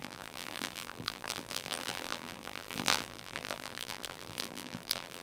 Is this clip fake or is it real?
fake